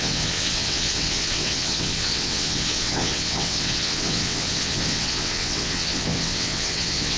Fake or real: fake